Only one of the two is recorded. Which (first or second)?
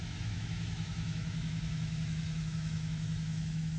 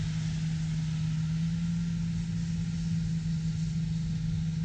second